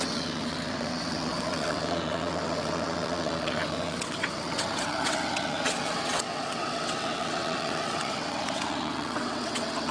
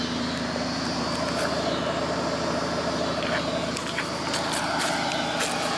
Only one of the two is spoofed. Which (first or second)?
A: first